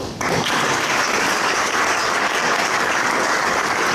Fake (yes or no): yes